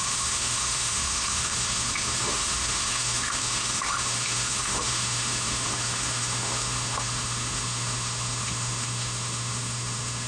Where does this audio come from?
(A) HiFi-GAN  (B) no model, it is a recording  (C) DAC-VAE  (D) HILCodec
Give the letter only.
C